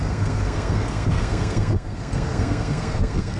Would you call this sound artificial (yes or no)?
yes